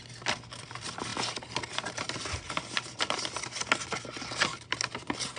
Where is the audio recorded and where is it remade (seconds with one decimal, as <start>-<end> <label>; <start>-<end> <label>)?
0.0-5.4 recorded